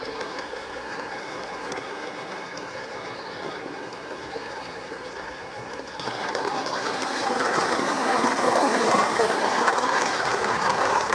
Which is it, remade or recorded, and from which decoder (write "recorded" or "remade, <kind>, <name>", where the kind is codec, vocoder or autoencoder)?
remade, codec, SNAC